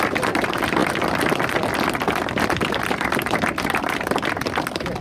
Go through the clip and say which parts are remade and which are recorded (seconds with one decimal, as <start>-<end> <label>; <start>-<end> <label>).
0.0-5.0 recorded